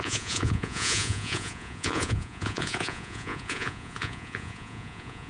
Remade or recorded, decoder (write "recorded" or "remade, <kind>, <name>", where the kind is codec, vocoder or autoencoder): remade, vocoder, Vocos